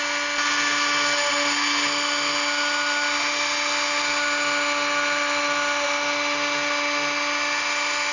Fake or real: real